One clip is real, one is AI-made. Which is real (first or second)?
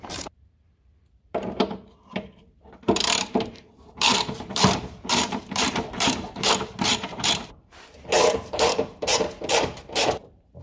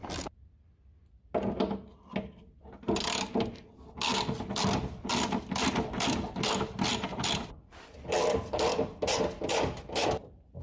second